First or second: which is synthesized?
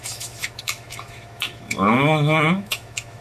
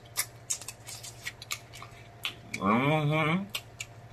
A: first